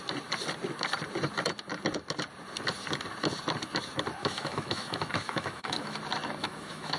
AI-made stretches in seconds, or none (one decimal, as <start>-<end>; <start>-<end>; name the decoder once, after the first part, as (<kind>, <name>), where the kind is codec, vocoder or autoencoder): 4.2-6.0 (autoencoder, DAC-VAE); 6.4-7.0